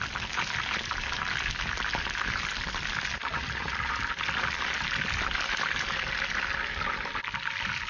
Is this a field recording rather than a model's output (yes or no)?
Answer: yes